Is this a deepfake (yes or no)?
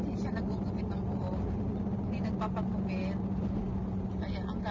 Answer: no